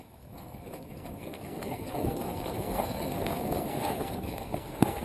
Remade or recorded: remade